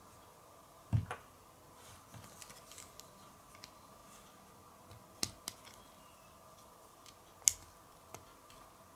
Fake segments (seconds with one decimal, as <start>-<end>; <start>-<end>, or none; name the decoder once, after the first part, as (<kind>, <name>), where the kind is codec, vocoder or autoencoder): none